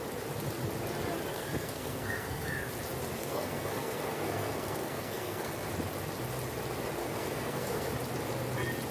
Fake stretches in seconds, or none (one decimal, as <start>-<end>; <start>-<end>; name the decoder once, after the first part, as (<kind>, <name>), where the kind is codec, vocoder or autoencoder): 1.3-2.7 (codec, SNAC); 3.2-5.7; 7.0-7.9

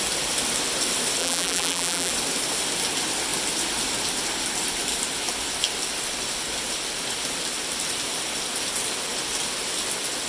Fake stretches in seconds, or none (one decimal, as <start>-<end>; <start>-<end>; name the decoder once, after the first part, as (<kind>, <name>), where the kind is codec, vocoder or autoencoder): 1.2-2.1 (vocoder, BigVGAN v2)